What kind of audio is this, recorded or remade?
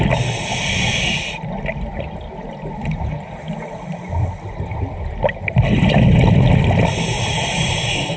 recorded